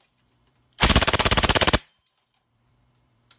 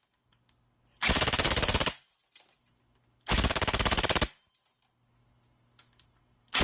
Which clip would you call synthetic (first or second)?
first